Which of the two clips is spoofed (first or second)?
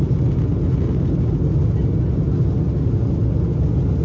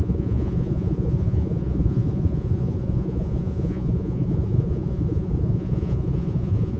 second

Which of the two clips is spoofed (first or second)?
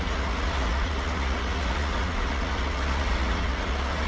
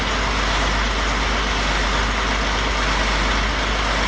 first